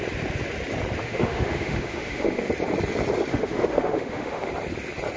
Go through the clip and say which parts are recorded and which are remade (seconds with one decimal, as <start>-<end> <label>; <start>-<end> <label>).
0.0-1.0 recorded; 1.0-2.5 remade; 2.5-3.3 recorded; 3.3-4.5 remade; 4.5-5.2 recorded